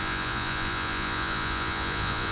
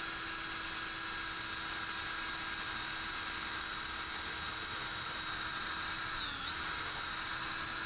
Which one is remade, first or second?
first